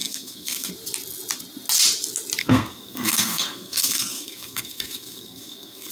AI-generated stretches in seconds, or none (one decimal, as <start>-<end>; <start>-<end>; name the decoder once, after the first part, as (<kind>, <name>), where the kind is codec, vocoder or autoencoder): 0.0-0.7 (codec, SNAC); 2.4-5.9